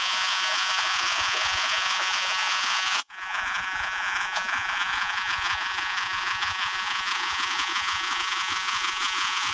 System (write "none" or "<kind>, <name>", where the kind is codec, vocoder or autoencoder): vocoder, Vocos